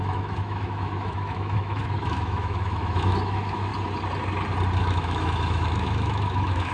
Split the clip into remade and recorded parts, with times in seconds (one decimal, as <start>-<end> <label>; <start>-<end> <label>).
0.0-3.7 remade; 3.7-4.8 recorded; 4.8-6.7 remade